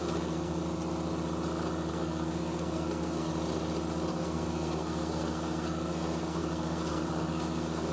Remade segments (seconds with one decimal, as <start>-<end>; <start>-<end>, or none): 0.0-0.6; 1.9-3.3; 4.1-7.9